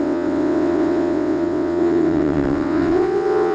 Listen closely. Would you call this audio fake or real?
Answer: fake